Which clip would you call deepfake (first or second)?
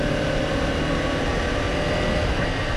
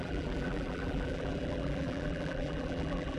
second